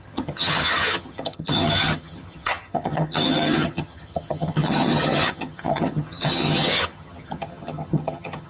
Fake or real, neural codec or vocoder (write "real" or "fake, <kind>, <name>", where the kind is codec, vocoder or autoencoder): fake, vocoder, HiFi-GAN